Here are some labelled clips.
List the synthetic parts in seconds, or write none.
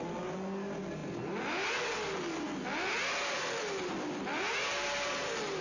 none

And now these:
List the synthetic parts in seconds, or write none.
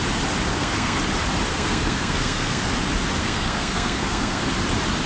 0.5-1.0 (codec, SNAC); 1.5-2.7; 3.2-4.4